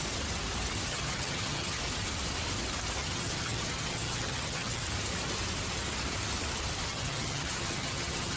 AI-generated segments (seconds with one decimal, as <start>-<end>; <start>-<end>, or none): 0.9-1.8; 3.0-4.8; 6.9-8.4